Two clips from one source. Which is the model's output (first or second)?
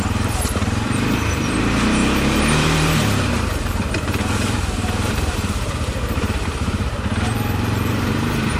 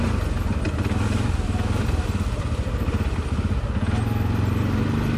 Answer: first